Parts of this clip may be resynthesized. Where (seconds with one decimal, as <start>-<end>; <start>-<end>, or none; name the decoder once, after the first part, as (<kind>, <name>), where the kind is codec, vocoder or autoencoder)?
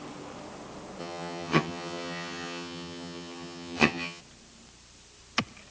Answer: 1.0-4.2 (vocoder, HiFi-GAN)